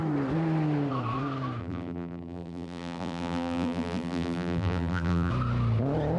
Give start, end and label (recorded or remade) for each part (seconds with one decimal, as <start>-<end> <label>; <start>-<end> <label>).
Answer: 0.0-1.6 recorded; 1.6-5.3 remade; 5.3-6.2 recorded